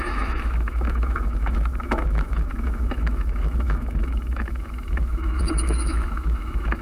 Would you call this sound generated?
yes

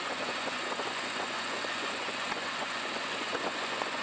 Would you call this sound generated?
yes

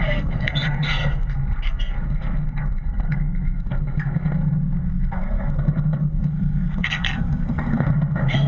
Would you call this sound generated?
yes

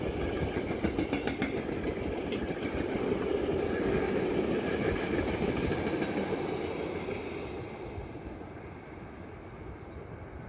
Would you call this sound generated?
no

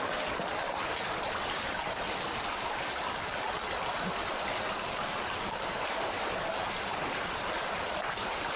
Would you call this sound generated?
no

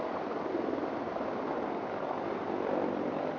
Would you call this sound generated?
no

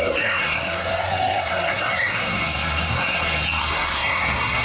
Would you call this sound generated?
yes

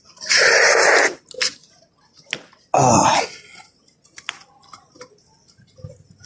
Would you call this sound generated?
no